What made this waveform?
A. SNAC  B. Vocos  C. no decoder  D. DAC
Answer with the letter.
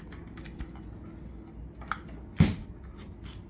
C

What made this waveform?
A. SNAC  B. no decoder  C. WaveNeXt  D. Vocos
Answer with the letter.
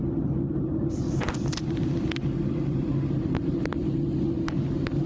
B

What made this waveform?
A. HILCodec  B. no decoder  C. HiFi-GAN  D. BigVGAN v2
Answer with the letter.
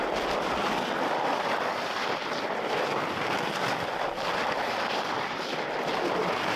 D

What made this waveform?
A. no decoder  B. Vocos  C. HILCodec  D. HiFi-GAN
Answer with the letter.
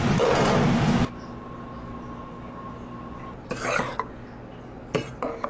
A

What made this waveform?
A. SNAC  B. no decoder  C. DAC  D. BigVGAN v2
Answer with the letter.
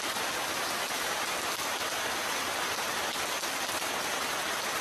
B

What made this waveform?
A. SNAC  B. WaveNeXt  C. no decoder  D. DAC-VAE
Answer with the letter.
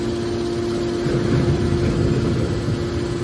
C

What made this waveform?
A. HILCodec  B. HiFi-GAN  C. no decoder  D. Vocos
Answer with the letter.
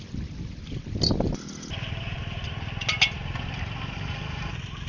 C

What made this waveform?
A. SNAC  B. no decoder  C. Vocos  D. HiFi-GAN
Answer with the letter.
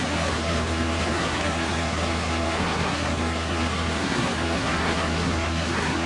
A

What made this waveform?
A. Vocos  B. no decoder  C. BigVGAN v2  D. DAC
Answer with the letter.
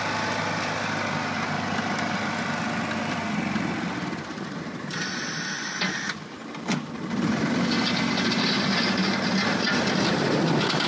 B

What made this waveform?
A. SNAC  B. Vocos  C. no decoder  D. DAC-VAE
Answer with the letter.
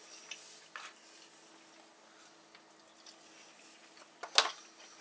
C